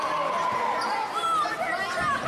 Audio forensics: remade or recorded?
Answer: recorded